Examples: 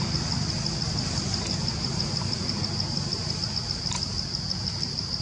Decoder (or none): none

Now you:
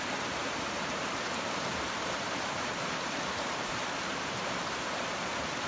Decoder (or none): vocoder, BigVGAN v2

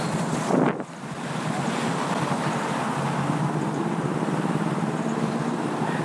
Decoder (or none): none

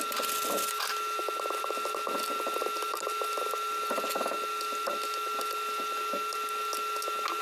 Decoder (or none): none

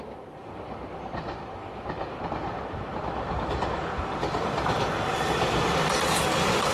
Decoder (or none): none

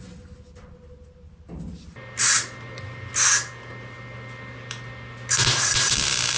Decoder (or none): none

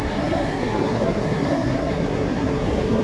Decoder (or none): codec, SNAC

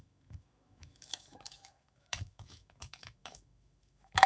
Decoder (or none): autoencoder, DAC-VAE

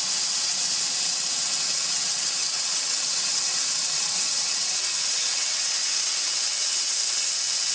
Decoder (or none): vocoder, WaveNeXt